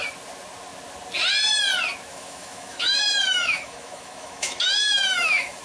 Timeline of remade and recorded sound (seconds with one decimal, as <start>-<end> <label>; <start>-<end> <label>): 0.0-2.1 recorded; 2.1-5.6 remade